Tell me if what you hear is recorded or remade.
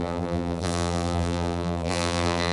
remade